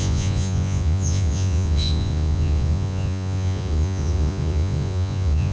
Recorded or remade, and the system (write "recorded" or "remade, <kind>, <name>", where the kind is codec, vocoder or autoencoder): remade, vocoder, Vocos